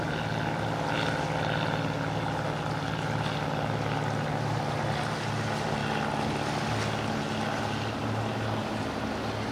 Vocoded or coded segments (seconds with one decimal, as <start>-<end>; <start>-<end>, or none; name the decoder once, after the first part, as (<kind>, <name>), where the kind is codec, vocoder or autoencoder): none